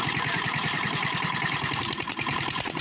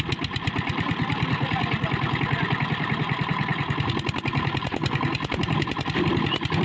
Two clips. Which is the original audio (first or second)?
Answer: second